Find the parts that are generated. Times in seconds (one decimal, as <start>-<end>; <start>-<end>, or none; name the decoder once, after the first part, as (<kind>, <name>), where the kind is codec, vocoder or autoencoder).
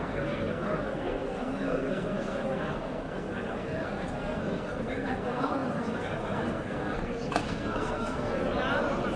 0.0-8.4 (codec, SNAC)